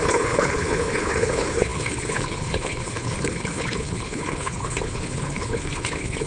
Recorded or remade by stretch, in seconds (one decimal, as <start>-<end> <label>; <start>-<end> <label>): 0.0-6.3 remade